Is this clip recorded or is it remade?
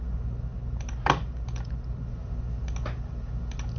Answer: recorded